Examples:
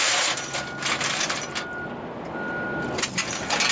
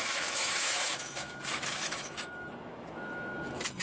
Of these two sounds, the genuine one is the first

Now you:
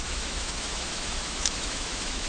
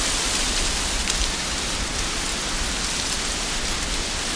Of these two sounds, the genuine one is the second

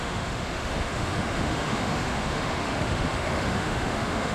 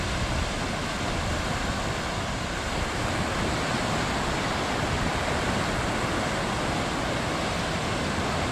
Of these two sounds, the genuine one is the second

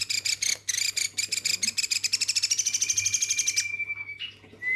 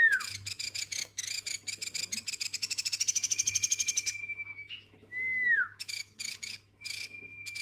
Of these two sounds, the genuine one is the first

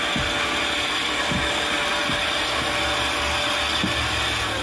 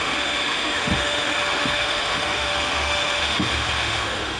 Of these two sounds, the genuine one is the first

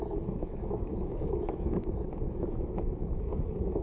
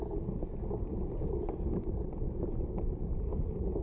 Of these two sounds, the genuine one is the second